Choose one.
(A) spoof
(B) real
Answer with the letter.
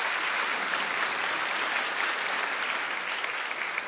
B